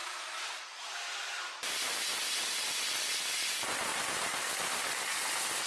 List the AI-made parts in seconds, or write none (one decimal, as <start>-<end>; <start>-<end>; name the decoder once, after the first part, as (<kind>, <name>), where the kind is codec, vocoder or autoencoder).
none

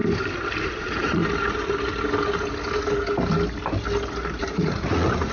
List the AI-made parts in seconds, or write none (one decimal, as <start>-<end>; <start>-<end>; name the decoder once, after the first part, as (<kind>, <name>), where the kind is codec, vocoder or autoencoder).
0.6-1.2 (vocoder, Vocos); 4.4-5.3

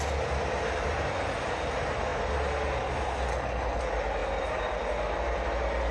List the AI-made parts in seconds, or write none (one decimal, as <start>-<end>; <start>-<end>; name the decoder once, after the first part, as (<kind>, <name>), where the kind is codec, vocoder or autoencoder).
3.3-3.8 (codec, HILCodec)

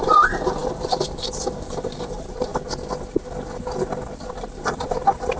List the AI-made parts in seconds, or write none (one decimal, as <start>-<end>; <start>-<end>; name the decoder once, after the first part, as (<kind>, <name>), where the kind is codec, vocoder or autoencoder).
0.0-2.5 (vocoder, BigVGAN v2); 4.4-5.4

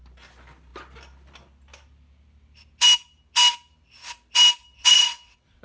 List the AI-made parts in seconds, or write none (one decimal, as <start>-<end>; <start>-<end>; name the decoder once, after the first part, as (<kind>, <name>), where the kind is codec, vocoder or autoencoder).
4.6-5.6 (vocoder, WaveNeXt)

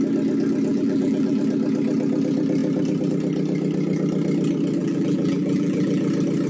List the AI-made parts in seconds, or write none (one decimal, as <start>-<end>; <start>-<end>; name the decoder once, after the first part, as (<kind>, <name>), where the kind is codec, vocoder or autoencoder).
0.7-1.4 (vocoder, BigVGAN v2); 4.8-6.1

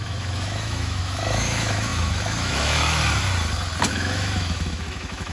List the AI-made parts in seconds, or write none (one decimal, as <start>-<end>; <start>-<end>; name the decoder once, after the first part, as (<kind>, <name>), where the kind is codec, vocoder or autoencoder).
0.0-3.0 (autoencoder, DAC-VAE); 3.9-5.3

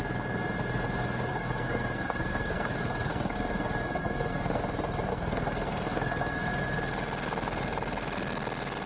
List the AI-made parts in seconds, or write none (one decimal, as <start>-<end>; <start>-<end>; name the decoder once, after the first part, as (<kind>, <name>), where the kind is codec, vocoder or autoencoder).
1.3-4.6 (codec, SNAC); 5.1-6.5